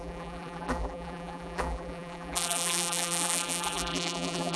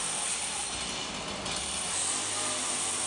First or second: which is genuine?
second